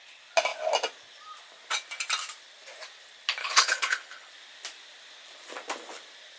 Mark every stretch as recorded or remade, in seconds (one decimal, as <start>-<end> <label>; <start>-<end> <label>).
0.0-3.4 recorded; 3.4-4.3 remade; 4.3-6.4 recorded